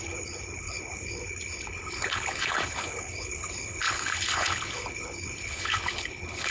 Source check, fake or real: fake